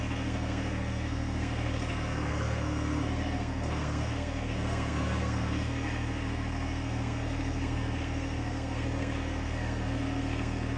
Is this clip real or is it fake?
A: fake